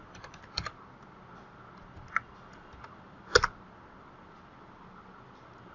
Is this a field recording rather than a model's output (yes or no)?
yes